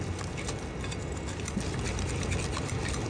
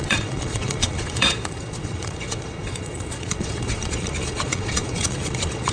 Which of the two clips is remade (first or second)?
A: second